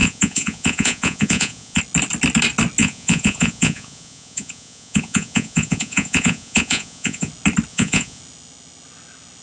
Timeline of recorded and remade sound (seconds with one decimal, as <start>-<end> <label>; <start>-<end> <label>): 0.0-1.8 remade; 1.8-2.8 recorded; 2.8-7.3 remade; 7.3-7.7 recorded; 7.7-8.2 remade; 8.2-9.4 recorded